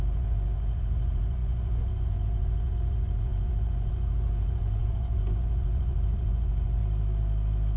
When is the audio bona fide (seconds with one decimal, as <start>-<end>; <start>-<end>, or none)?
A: 6.8-7.8